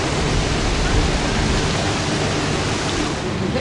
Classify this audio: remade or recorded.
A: recorded